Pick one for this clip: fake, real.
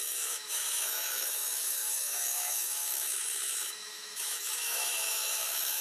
fake